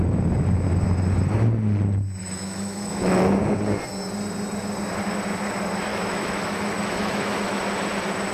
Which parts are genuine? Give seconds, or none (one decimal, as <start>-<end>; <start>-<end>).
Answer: 0.0-2.2; 3.4-5.9; 7.6-8.3